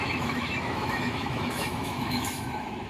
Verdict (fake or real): fake